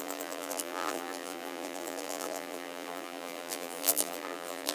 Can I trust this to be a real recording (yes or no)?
no